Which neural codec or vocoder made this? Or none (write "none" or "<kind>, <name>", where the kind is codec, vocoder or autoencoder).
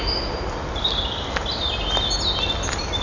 none